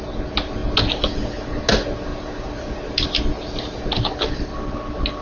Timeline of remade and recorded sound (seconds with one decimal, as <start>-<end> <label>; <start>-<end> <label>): 0.0-5.2 recorded